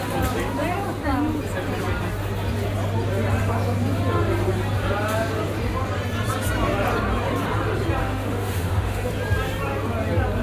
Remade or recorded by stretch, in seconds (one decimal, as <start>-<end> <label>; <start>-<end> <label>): 0.0-8.0 recorded; 8.0-9.1 remade; 9.1-10.4 recorded